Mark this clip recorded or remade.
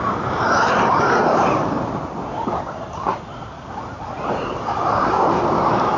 recorded